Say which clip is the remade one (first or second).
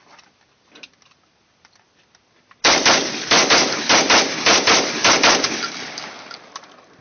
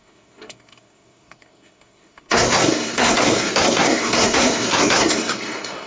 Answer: second